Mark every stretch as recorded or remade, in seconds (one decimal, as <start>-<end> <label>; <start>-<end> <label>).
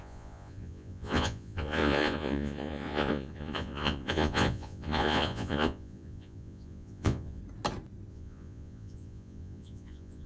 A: 0.0-7.4 remade; 7.4-8.1 recorded; 8.1-10.3 remade